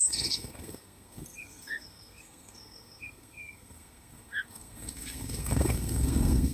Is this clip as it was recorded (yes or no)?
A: no